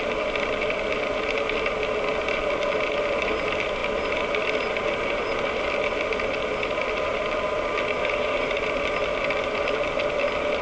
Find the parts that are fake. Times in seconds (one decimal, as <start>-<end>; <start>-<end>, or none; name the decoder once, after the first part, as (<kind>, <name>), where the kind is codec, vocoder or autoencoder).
none